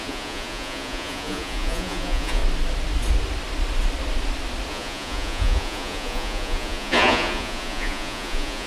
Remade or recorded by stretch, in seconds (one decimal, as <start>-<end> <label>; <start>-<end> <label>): 0.0-2.4 remade; 2.4-4.7 recorded; 4.7-8.7 remade